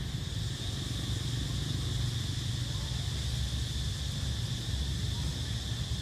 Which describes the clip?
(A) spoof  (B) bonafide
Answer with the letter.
B